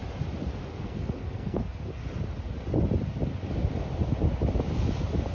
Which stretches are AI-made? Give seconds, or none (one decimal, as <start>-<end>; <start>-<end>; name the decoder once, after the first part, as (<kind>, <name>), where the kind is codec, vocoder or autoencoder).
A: 0.7-2.0 (codec, SNAC)